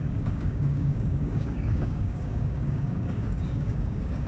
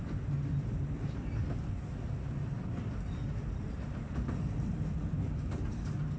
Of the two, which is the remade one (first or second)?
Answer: first